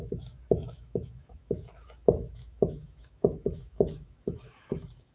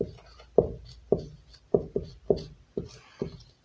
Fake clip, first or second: first